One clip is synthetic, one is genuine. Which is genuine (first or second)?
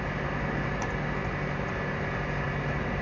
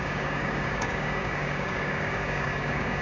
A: first